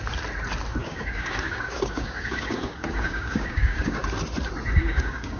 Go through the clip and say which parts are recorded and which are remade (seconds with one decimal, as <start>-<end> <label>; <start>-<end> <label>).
0.0-0.8 recorded; 0.8-4.0 remade; 4.0-4.8 recorded; 4.8-5.4 remade